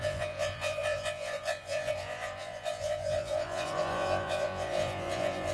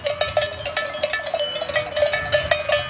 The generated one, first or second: first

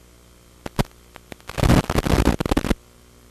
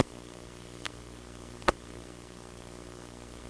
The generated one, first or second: second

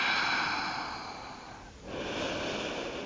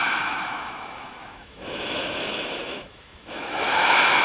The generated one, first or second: second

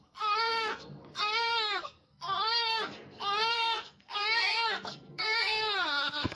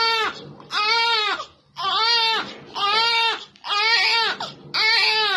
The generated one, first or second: first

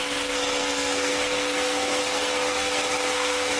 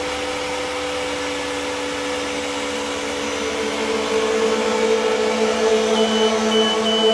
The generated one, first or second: first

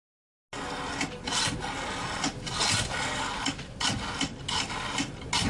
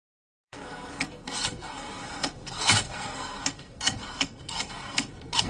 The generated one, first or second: second